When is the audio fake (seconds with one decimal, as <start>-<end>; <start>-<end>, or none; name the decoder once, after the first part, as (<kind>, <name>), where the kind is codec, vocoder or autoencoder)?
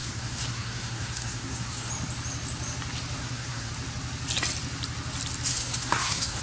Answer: 0.0-1.9 (codec, SNAC); 3.2-3.7; 5.5-6.4